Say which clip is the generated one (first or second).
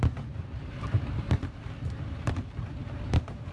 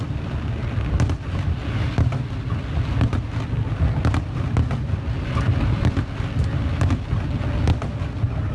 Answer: first